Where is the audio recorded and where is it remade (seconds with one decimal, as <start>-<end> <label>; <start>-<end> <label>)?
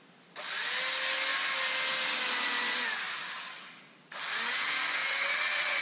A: 0.0-5.0 recorded; 5.0-5.8 remade